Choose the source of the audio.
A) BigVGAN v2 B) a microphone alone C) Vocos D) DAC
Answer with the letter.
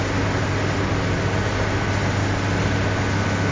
B